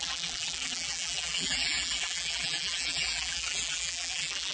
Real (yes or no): no